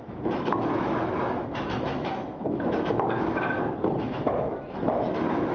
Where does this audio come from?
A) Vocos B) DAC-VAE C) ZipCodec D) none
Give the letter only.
B